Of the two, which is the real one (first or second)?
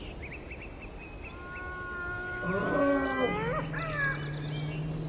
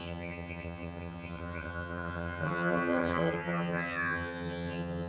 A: first